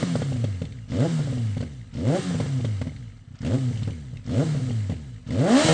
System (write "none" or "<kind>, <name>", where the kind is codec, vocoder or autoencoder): none